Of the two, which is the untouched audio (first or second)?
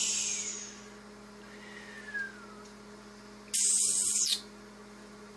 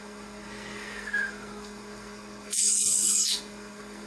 first